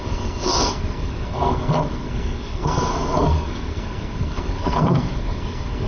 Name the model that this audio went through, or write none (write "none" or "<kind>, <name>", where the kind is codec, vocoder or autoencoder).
codec, SNAC